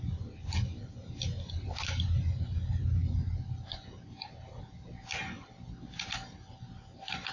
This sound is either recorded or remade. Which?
recorded